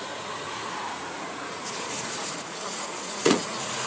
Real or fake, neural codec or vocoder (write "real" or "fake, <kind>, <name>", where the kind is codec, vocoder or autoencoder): fake, vocoder, Vocos